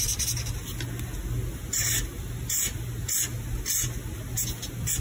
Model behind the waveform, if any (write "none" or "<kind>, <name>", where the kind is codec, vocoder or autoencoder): none